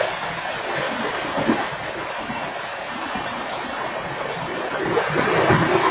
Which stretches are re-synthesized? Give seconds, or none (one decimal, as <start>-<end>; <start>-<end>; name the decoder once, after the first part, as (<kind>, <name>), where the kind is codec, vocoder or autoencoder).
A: 2.7-5.3 (vocoder, BigVGAN v2)